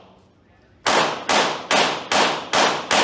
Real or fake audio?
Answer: real